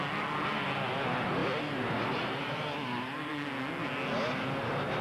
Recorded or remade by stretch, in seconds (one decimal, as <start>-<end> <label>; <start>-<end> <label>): 0.0-1.4 recorded; 1.4-3.3 remade; 3.3-5.0 recorded